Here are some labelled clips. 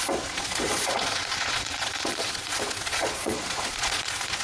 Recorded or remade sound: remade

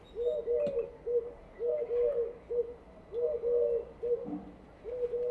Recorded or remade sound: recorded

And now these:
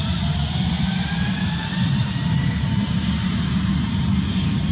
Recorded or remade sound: recorded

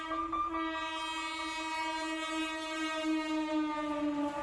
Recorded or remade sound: recorded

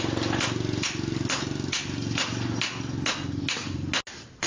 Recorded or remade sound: recorded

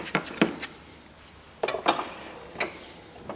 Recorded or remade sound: remade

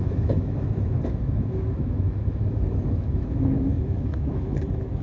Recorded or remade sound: remade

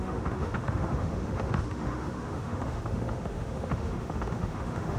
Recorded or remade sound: remade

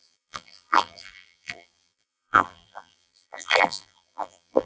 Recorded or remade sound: remade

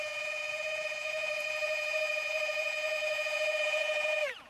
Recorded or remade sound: remade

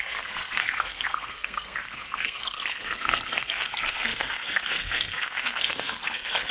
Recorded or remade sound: remade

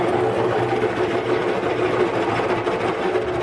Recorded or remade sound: recorded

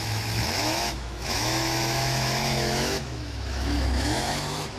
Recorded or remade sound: remade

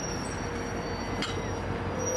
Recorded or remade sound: recorded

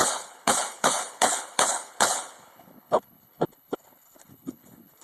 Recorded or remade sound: remade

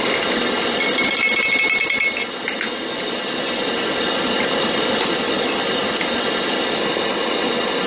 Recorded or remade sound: recorded